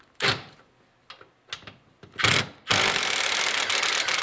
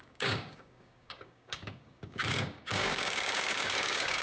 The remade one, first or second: second